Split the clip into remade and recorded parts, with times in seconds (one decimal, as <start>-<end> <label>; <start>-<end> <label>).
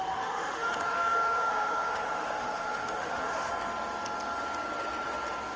0.0-3.5 remade; 3.5-5.6 recorded